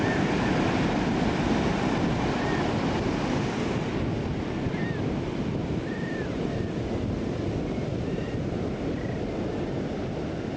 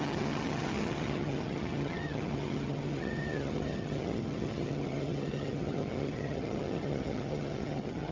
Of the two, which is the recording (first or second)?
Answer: first